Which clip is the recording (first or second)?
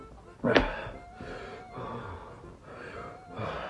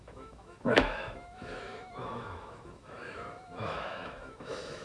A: first